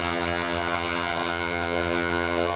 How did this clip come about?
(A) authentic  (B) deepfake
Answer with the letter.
B